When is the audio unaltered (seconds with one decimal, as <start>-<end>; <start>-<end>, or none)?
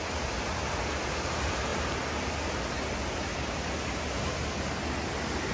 0.0-5.5